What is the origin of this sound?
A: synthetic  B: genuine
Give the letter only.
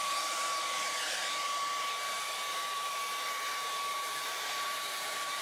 A